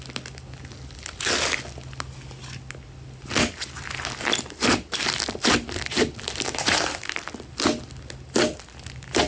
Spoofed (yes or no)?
no